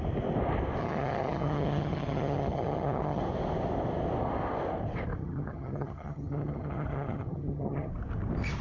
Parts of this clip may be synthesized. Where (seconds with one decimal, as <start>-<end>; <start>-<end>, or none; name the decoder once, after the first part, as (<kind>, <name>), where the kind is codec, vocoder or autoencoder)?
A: 0.8-3.2 (vocoder, HiFi-GAN); 5.2-7.9